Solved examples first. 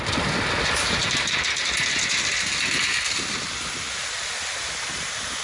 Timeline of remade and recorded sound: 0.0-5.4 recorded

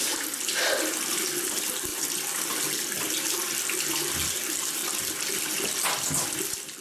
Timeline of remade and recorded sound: 0.0-6.8 recorded

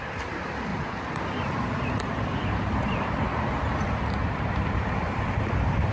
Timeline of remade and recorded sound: 0.0-0.7 remade; 0.7-1.9 recorded; 1.9-5.9 remade

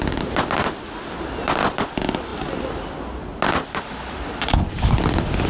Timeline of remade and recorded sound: 0.0-5.5 recorded